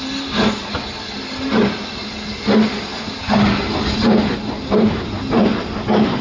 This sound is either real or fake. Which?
real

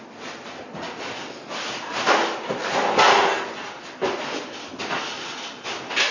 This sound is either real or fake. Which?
real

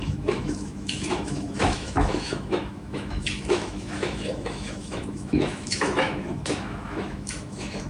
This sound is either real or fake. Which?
fake